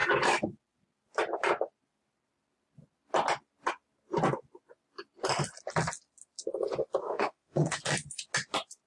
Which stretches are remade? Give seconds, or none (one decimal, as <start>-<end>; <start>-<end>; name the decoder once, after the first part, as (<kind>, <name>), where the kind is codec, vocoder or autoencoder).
7.0-7.8 (autoencoder, DAC-VAE)